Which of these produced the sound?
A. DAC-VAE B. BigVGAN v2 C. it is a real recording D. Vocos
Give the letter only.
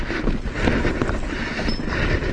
C